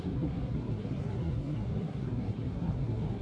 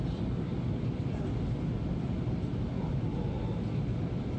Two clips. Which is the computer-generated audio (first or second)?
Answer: first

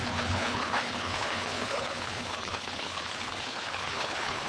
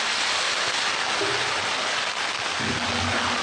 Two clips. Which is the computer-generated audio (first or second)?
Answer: first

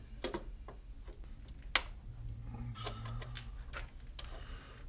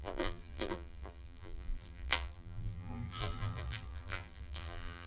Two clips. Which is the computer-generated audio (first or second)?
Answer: second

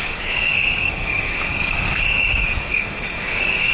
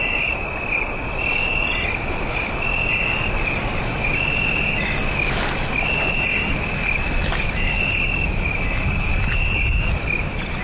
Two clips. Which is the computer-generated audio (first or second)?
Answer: first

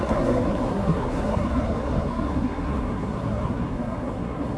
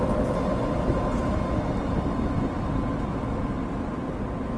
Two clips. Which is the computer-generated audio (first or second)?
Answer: first